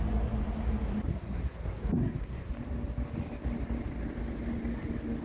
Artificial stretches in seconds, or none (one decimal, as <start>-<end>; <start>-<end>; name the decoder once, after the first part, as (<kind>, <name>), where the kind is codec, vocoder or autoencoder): 1.1-2.5 (codec, SNAC)